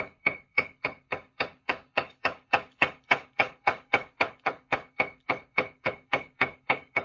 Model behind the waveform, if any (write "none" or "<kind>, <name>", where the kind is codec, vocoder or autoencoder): codec, HILCodec